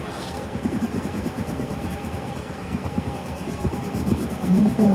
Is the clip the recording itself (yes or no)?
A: no